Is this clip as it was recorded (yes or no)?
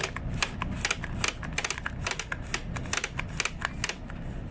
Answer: yes